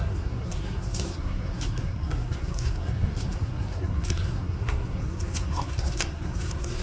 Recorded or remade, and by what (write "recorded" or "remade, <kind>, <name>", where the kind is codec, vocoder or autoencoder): remade, codec, SNAC